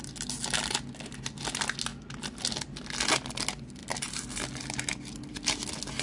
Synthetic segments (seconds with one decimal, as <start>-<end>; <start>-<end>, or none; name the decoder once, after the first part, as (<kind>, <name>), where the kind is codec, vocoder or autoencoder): none